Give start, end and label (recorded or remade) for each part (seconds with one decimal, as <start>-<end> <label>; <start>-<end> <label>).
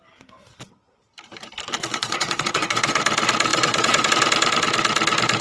0.0-1.9 recorded; 1.9-3.0 remade; 3.0-3.5 recorded; 3.5-4.1 remade; 4.1-5.4 recorded